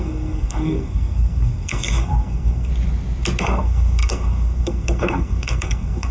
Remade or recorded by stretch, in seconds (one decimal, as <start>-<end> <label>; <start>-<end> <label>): 0.0-2.7 remade; 2.7-3.4 recorded; 3.4-6.1 remade